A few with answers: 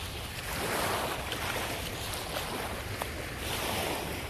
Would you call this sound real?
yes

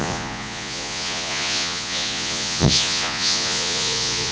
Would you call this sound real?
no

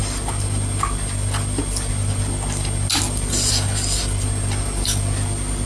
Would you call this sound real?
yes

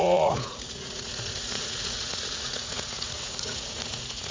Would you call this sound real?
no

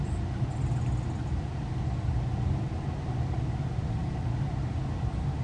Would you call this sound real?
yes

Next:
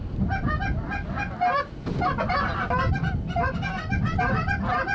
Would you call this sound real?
yes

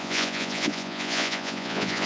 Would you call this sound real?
no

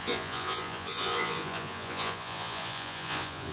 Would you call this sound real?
no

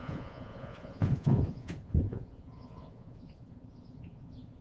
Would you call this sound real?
no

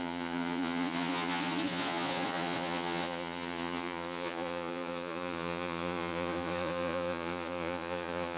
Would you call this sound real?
no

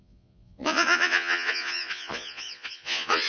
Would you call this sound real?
no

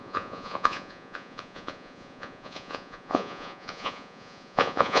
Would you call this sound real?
no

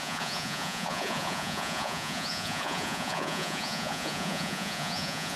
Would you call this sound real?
no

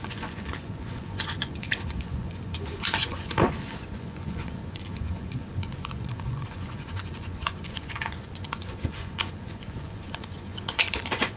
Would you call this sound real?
no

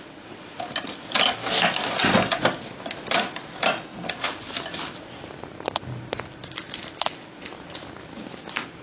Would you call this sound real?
yes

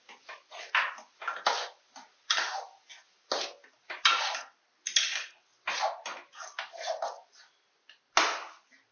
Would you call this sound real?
yes